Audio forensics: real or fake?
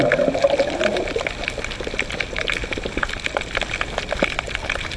real